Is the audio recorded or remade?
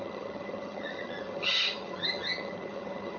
remade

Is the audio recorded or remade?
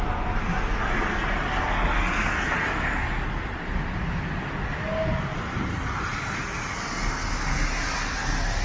recorded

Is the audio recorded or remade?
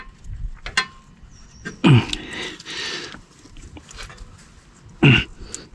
recorded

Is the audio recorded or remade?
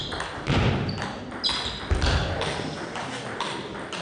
recorded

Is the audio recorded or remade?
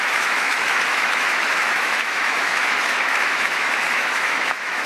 remade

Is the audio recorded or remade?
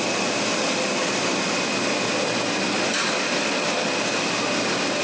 recorded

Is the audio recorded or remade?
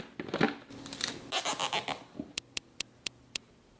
recorded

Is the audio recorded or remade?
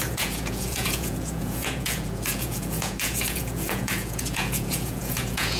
remade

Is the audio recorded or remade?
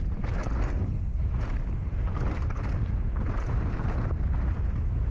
recorded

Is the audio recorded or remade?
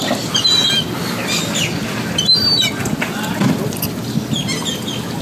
recorded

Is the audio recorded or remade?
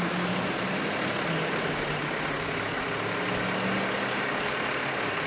recorded